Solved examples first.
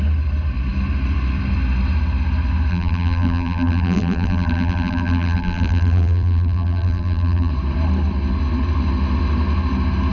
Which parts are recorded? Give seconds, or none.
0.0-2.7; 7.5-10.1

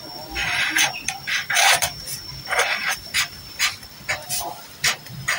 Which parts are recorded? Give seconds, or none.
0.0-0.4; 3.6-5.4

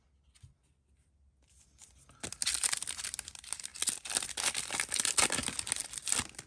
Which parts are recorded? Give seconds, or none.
0.0-6.5

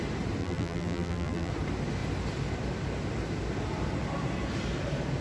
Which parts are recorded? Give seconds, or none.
0.0-0.4; 1.5-5.2